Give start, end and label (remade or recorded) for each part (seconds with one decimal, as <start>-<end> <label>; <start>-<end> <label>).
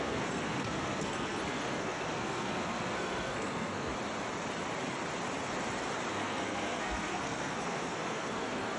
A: 0.0-3.9 remade; 3.9-6.1 recorded; 6.1-8.8 remade